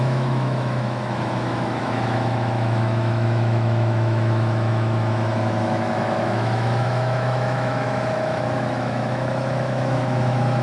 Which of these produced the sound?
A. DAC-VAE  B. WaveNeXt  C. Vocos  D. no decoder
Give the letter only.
A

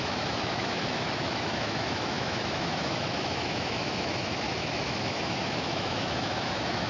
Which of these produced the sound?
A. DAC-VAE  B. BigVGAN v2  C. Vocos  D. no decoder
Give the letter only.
A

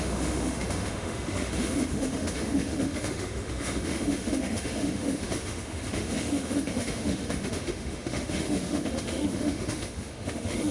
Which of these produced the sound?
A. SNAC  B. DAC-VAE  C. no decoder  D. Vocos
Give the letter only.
B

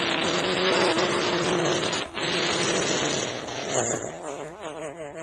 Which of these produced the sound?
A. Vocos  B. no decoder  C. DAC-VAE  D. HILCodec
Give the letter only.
B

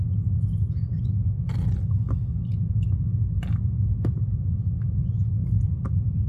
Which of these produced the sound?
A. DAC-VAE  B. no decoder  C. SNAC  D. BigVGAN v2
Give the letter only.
B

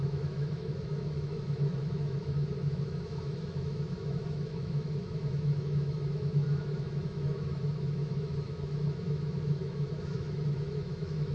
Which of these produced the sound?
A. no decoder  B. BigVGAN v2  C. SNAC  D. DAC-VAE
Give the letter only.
D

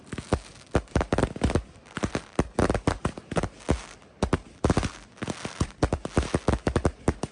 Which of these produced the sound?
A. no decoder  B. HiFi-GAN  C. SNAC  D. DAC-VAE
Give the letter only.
A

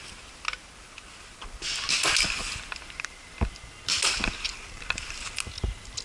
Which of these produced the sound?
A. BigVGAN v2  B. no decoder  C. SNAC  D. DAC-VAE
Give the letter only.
B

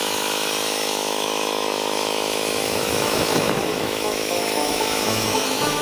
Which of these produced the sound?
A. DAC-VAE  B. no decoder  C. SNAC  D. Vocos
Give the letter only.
A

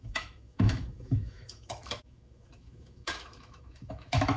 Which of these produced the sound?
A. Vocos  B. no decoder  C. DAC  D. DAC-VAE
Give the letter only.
D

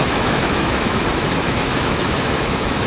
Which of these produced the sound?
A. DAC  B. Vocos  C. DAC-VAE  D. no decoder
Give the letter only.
C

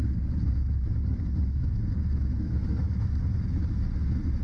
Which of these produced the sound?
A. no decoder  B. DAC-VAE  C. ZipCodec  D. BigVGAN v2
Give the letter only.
B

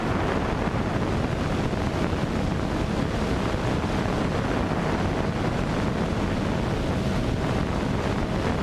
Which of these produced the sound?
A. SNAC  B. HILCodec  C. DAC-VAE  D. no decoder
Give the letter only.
D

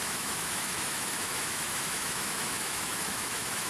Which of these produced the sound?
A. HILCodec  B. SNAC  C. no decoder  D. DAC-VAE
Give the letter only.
D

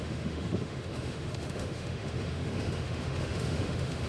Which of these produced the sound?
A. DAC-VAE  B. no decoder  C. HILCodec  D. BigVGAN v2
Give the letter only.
A